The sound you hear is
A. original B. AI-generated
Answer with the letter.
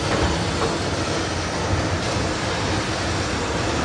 A